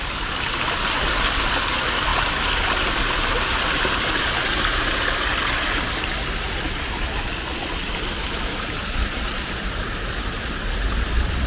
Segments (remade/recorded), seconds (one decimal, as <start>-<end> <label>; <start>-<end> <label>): 0.0-11.5 recorded